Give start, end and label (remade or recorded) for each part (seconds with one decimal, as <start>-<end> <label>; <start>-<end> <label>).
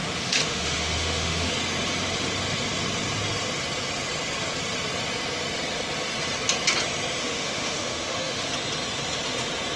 0.0-1.5 remade; 1.5-7.2 recorded; 7.2-8.5 remade; 8.5-9.8 recorded